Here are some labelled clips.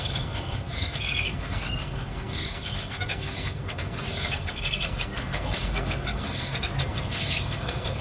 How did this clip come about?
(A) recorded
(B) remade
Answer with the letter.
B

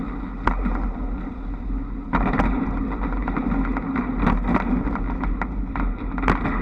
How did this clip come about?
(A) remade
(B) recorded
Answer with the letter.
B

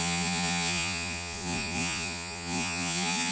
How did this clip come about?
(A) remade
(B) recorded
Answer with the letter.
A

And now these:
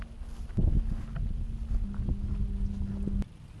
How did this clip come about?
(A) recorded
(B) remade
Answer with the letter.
A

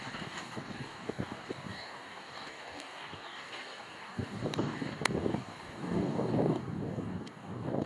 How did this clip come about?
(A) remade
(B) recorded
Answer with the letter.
A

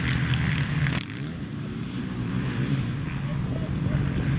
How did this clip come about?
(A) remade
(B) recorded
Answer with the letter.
B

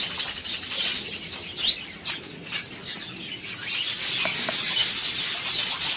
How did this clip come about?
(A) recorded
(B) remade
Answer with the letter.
A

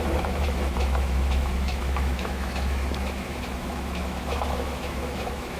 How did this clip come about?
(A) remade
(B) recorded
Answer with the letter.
A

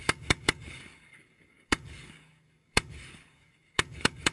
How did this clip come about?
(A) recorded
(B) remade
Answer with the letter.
B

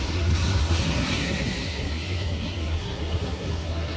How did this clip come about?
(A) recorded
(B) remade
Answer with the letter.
B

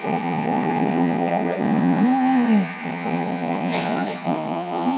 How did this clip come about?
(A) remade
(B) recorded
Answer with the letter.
A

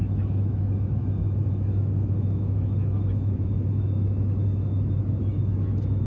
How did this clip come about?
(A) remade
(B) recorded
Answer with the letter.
A